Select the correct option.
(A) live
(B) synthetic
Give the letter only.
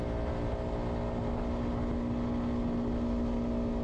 A